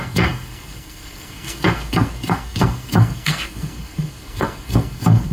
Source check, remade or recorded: remade